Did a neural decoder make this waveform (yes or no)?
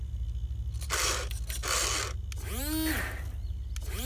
no